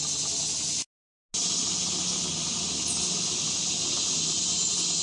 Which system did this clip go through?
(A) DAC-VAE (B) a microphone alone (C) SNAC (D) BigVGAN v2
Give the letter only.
B